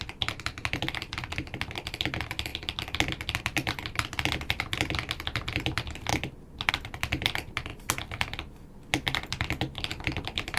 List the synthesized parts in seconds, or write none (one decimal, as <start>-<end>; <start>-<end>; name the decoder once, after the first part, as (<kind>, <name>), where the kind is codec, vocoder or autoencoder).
0.0-2.5 (vocoder, BigVGAN v2); 3.4-7.7; 9.9-10.6